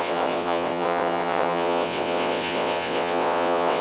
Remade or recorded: remade